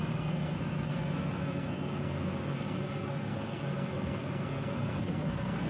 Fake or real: fake